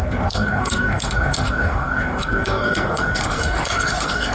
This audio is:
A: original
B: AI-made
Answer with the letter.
B